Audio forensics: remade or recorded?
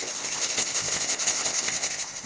remade